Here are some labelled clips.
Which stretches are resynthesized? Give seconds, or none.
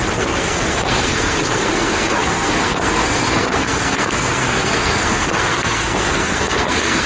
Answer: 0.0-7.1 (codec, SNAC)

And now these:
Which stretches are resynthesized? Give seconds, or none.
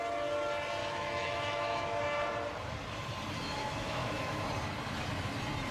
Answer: 0.8-2.0 (autoencoder, DAC-VAE); 3.6-4.5